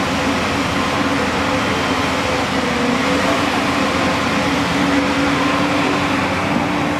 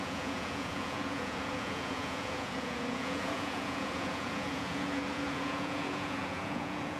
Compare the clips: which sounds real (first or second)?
first